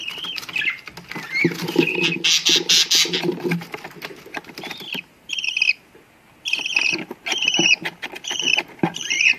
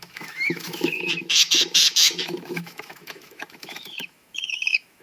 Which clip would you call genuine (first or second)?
first